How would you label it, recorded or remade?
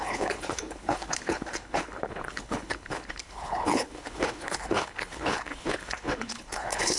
remade